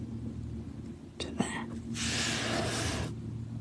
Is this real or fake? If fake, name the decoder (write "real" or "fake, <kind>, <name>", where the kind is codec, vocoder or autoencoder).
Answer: real